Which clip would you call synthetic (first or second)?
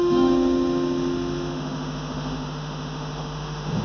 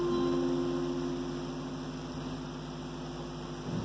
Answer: first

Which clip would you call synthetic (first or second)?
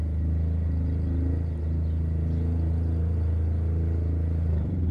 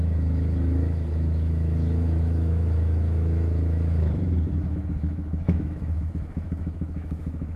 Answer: second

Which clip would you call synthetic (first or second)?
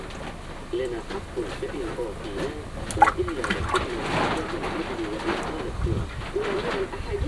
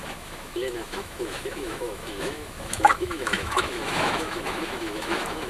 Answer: second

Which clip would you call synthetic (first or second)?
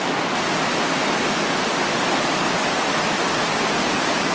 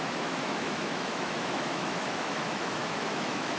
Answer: second